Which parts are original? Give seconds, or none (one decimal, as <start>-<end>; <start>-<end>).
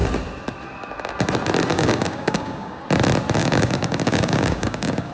0.0-1.7; 2.8-3.4